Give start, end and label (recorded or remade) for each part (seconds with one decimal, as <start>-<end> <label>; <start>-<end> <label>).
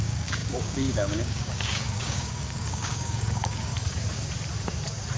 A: 0.0-3.7 remade; 3.7-5.2 recorded